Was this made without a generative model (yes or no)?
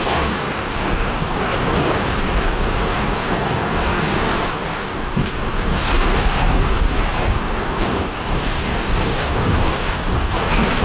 no